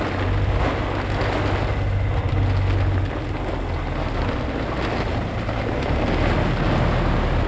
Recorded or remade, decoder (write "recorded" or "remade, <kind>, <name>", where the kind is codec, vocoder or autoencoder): recorded